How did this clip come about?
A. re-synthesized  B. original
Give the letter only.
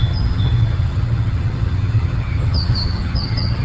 A